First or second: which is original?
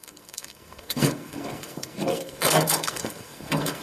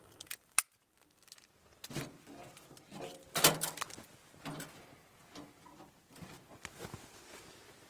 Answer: second